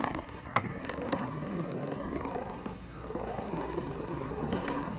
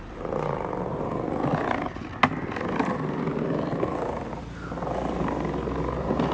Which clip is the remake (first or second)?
first